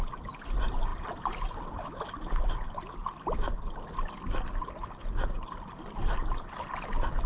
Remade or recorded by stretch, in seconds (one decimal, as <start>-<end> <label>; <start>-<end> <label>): 0.0-7.3 recorded